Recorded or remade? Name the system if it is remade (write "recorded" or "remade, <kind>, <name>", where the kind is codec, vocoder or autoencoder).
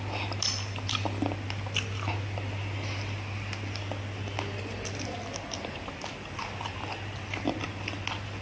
recorded